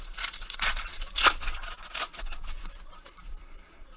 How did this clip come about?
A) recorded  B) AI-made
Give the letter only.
B